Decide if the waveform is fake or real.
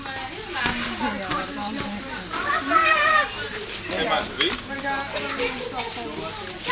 real